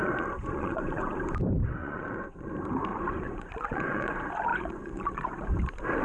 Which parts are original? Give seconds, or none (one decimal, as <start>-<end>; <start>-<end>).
1.2-1.8; 2.5-2.9; 4.1-4.5; 5.5-6.0